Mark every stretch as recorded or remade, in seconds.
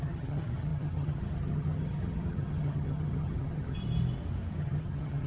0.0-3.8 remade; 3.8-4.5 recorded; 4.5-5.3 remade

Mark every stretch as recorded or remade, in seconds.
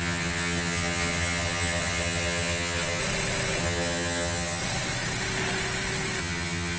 0.0-3.0 remade; 3.0-3.6 recorded; 3.6-4.6 remade; 4.6-6.2 recorded; 6.2-6.8 remade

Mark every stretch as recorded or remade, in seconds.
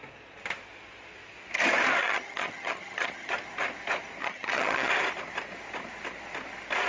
0.0-2.0 recorded; 2.0-3.3 remade; 3.3-4.2 recorded; 4.2-4.9 remade; 4.9-6.9 recorded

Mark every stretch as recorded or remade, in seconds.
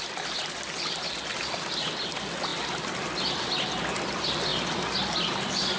0.0-5.8 recorded